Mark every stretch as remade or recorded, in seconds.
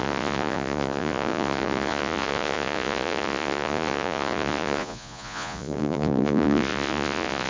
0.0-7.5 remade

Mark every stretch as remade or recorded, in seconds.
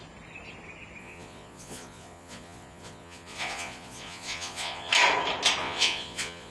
0.0-1.0 recorded; 1.0-4.9 remade; 4.9-5.6 recorded; 5.6-6.5 remade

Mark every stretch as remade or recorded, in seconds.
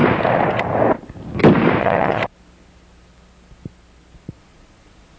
0.0-1.8 recorded; 1.8-2.2 remade; 2.2-4.4 recorded; 4.4-5.2 remade